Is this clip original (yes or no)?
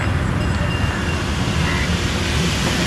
yes